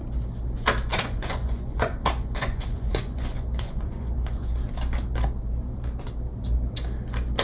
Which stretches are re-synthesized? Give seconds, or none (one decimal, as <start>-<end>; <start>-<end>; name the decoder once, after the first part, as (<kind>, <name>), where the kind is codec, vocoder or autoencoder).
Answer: 0.9-4.5 (vocoder, Vocos)